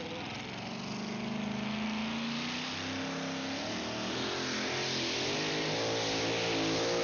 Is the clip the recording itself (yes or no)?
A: yes